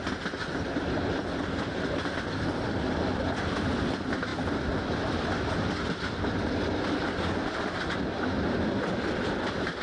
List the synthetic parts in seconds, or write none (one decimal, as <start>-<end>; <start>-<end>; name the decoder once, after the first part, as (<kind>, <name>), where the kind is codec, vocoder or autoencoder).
none